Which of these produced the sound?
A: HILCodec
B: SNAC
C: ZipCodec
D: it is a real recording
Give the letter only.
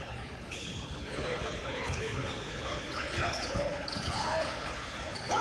A